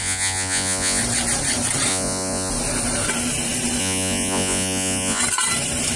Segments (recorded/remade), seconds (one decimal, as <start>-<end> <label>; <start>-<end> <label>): 0.0-1.0 remade; 1.0-1.9 recorded; 1.9-2.5 remade; 2.5-3.8 recorded; 3.8-5.2 remade; 5.2-6.0 recorded